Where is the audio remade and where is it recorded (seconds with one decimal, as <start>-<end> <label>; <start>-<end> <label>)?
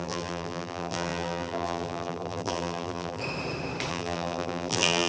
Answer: 0.0-3.2 remade; 3.2-3.9 recorded; 3.9-5.1 remade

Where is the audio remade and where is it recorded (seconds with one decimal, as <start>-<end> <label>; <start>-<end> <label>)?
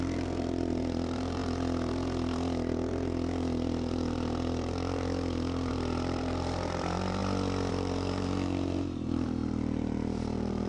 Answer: 0.0-7.2 remade; 7.2-7.7 recorded; 7.7-10.7 remade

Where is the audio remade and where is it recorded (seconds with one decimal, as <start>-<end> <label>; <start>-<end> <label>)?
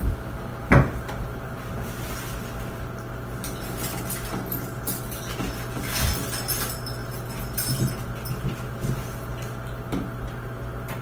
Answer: 0.0-11.0 recorded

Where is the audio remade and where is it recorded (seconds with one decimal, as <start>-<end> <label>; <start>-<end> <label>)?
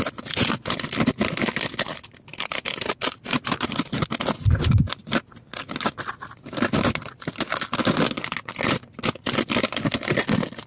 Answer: 0.0-2.3 recorded; 2.3-3.7 remade; 3.7-10.7 recorded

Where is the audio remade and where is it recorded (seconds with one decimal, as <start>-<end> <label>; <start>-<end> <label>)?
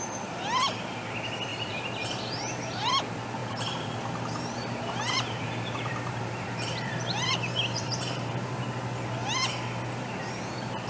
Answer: 0.0-1.5 recorded; 1.5-2.9 remade; 2.9-3.4 recorded; 3.4-8.3 remade; 8.3-10.9 recorded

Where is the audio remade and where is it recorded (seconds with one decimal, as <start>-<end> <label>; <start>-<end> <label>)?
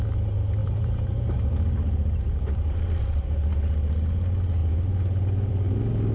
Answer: 0.0-0.6 recorded; 0.6-3.5 remade; 3.5-6.1 recorded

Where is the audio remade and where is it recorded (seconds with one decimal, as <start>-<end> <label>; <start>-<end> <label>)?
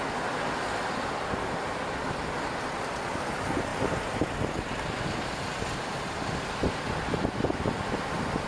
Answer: 0.0-8.5 recorded